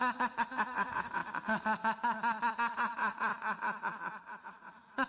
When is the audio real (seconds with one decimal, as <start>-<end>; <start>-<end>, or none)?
1.2-2.5; 3.3-4.4

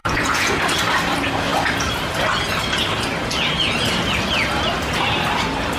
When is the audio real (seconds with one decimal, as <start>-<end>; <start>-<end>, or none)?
0.6-5.8

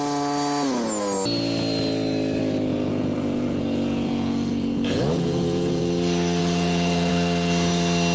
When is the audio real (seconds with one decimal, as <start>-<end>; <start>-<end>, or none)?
0.0-2.7; 5.8-6.4; 7.1-8.1

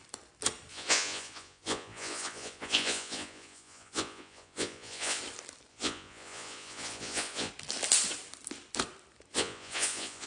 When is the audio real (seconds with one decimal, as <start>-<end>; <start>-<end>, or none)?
0.0-0.7; 5.2-5.7; 7.5-9.3

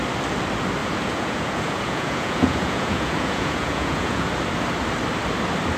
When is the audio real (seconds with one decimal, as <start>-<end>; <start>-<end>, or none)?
0.0-0.8; 4.3-5.8